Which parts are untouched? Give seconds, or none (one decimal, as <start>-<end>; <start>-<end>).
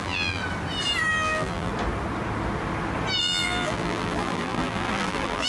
0.4-1.1; 1.7-3.2